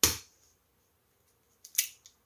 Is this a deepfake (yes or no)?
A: no